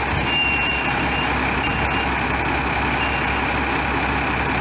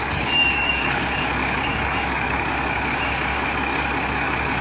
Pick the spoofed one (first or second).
second